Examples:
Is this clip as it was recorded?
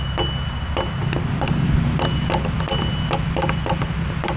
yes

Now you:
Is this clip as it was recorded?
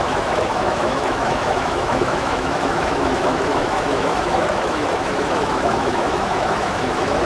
no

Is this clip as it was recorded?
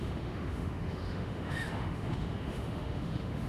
no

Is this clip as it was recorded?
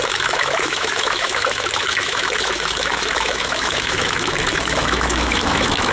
no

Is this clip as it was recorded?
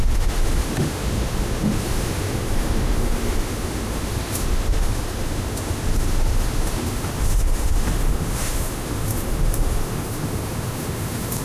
no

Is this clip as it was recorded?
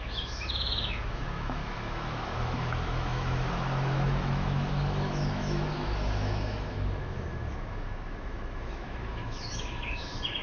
no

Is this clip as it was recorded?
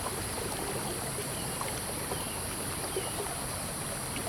yes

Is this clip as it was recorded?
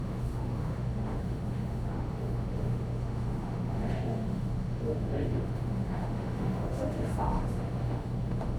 no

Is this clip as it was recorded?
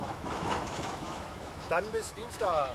no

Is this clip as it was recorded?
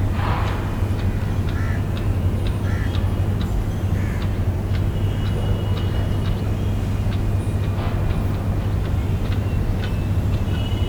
yes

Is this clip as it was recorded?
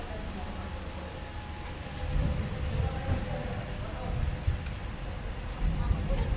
yes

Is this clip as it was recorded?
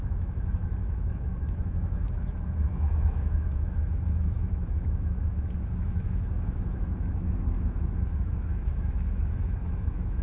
no